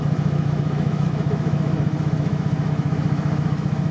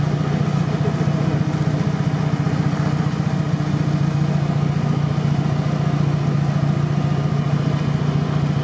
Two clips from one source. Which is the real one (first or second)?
second